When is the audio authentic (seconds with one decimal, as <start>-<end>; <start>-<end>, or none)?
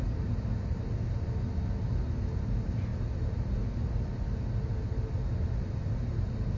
0.0-6.6